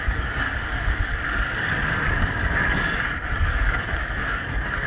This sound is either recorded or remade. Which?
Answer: remade